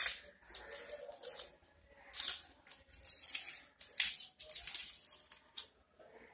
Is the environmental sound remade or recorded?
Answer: recorded